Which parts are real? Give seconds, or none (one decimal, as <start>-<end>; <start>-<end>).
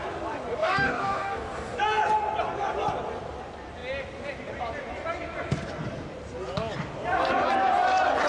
0.0-0.6; 1.8-8.3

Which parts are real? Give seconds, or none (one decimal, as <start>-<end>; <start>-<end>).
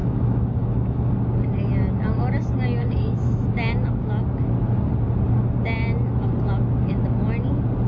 1.1-2.8; 3.5-7.9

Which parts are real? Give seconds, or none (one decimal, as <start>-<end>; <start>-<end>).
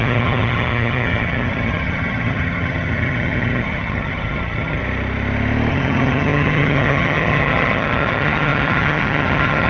4.8-5.7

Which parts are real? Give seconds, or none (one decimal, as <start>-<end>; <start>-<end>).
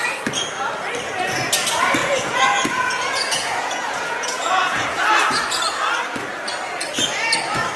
0.0-2.0; 5.0-7.8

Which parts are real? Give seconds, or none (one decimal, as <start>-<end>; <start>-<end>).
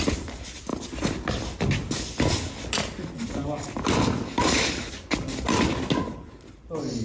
0.0-7.0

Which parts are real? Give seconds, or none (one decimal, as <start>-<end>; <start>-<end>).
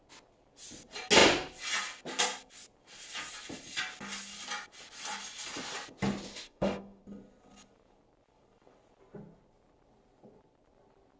0.0-6.3; 7.0-11.2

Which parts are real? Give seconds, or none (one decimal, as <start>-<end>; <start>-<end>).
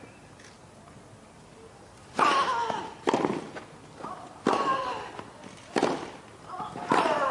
2.4-5.7